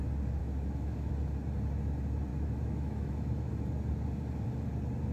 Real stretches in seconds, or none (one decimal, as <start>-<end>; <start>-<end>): 0.0-0.4; 1.1-2.3; 3.5-5.1